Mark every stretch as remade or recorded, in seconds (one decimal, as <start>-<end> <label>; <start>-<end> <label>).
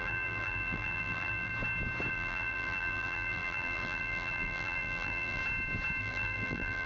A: 0.0-1.5 remade; 1.5-2.1 recorded; 2.1-5.4 remade; 5.4-6.0 recorded; 6.0-6.9 remade